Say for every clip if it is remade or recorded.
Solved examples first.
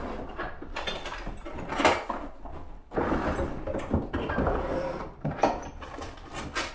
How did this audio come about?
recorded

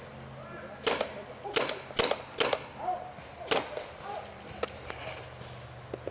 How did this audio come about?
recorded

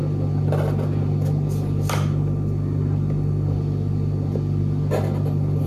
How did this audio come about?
recorded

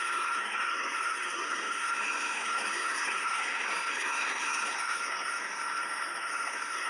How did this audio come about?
remade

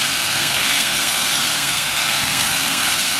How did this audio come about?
remade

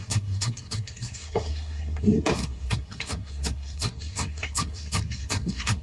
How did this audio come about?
remade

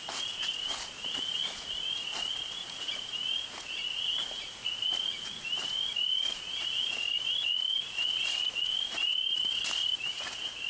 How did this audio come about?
remade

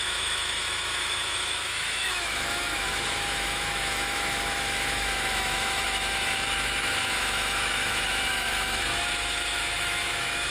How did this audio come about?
remade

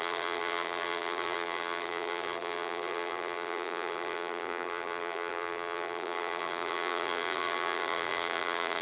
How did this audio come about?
remade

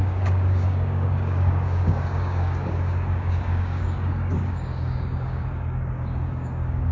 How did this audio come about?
remade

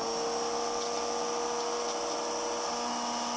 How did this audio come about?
recorded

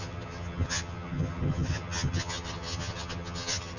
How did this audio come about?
remade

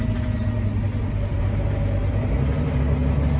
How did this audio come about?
recorded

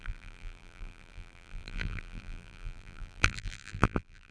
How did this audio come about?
remade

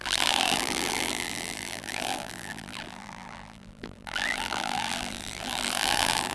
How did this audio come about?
remade